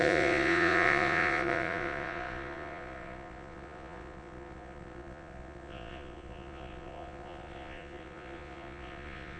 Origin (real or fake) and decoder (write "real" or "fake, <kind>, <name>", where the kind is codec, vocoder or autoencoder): fake, vocoder, Vocos